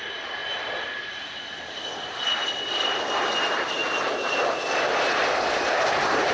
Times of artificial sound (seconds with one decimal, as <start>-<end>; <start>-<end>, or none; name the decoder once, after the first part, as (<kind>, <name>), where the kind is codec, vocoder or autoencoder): 0.0-0.4 (vocoder, BigVGAN v2); 0.9-1.8; 2.7-3.8; 5.6-6.3